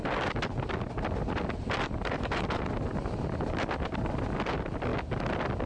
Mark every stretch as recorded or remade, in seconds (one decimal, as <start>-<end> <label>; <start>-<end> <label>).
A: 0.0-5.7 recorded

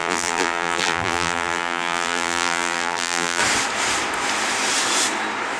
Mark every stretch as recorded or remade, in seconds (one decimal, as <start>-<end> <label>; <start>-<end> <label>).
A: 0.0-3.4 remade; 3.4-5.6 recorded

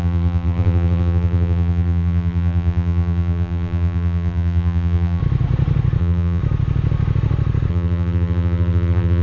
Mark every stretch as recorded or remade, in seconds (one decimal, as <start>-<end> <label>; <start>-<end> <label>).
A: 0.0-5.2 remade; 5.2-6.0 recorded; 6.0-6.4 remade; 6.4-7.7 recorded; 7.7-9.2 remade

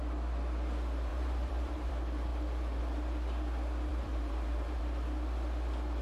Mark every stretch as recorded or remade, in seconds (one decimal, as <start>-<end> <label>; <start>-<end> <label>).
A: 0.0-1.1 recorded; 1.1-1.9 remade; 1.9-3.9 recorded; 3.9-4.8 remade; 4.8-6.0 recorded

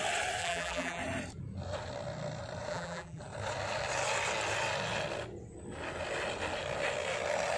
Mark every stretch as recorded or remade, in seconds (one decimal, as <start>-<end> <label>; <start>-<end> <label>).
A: 0.0-0.4 recorded; 0.4-1.0 remade; 1.0-2.7 recorded; 2.7-3.2 remade; 3.2-7.6 recorded